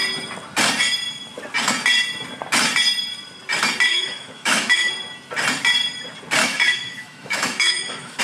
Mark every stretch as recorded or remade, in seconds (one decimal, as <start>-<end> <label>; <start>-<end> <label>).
0.0-3.9 recorded; 3.9-4.9 remade; 4.9-6.4 recorded; 6.4-8.2 remade